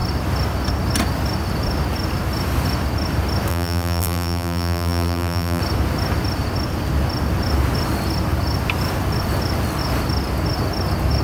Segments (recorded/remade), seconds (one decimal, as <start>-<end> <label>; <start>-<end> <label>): 0.0-3.5 recorded; 3.5-5.6 remade; 5.6-11.2 recorded